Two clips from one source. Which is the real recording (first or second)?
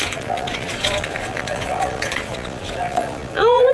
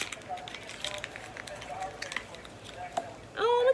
second